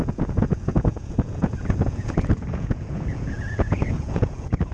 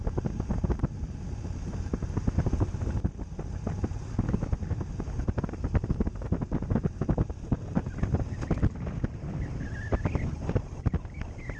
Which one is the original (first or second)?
second